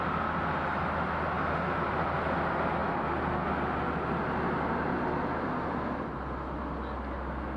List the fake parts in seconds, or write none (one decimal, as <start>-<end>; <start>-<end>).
none